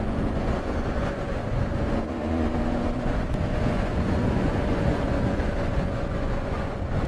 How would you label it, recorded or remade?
remade